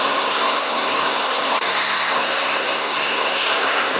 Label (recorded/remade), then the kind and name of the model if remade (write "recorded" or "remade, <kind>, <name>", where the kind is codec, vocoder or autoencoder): remade, codec, SNAC